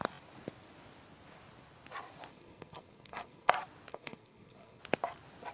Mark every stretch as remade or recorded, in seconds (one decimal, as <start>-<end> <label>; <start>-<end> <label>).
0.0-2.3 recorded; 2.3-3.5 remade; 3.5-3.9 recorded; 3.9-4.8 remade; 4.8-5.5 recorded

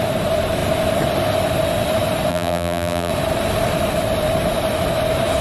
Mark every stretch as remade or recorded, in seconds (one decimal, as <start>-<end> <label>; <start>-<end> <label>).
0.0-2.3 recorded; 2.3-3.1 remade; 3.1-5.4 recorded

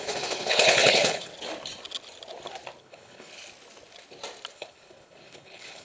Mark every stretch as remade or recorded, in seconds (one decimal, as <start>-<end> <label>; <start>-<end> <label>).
0.0-1.3 remade; 1.3-2.8 recorded; 2.8-3.4 remade; 3.4-4.5 recorded; 4.5-5.8 remade

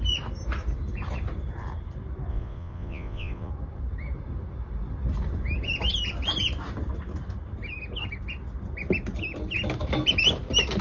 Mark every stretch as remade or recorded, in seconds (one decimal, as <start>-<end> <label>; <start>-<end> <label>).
0.0-2.3 recorded; 2.3-3.5 remade; 3.5-10.8 recorded